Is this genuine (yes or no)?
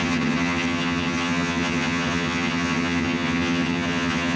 no